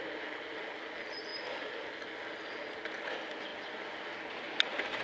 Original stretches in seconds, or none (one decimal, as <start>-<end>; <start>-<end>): 0.0-5.0